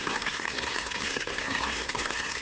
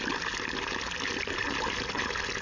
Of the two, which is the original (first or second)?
second